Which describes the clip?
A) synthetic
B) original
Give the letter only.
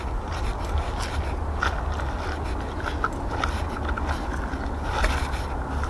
B